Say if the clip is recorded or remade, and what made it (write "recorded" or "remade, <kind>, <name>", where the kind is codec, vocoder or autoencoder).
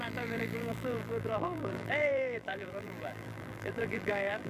remade, vocoder, BigVGAN v2